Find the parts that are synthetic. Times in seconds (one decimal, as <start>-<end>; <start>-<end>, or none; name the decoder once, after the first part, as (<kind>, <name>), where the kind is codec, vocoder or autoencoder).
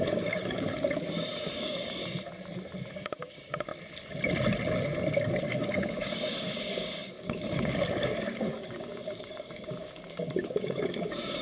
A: 0.0-2.0 (codec, DAC); 2.9-3.7; 5.4-11.4